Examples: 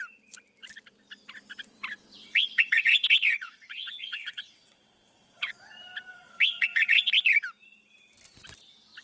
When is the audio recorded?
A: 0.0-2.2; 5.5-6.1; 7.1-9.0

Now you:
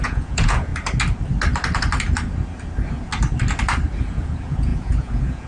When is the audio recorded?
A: 0.7-4.0